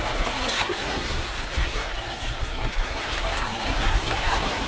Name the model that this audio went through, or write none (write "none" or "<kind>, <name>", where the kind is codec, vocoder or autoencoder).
codec, SNAC